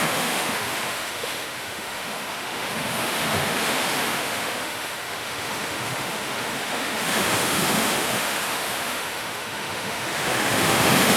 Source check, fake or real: fake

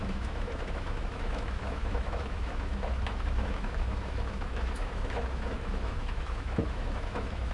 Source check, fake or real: fake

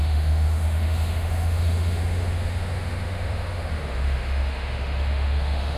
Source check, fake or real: fake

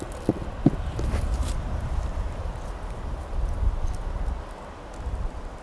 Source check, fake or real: real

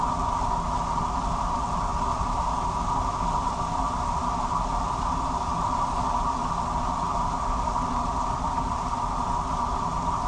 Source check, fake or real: real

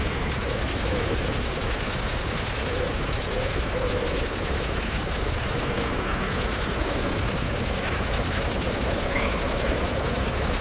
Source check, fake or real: fake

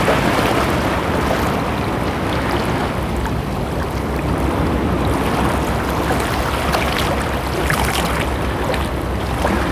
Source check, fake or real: real